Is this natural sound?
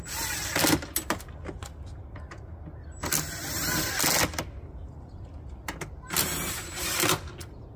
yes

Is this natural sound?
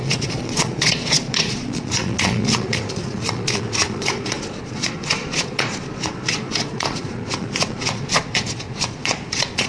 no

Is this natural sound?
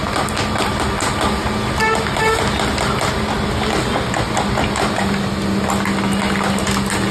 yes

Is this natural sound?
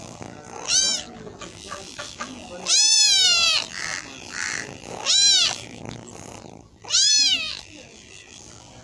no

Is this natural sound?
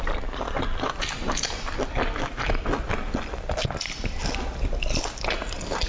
yes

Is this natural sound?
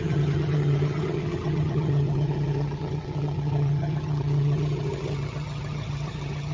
no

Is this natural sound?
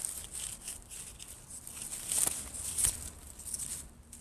yes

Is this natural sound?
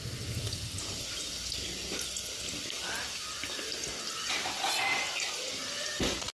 yes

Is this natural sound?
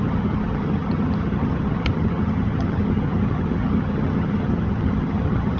no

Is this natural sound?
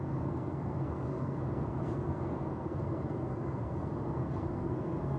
no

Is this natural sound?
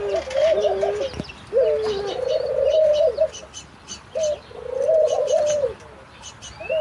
yes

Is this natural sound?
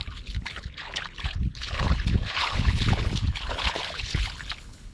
no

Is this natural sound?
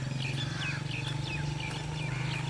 yes